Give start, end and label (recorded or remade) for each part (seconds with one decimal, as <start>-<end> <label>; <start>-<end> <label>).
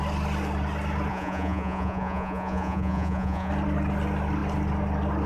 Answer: 0.0-1.1 recorded; 1.1-3.5 remade; 3.5-5.3 recorded